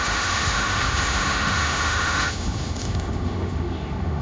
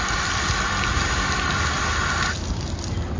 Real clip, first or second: second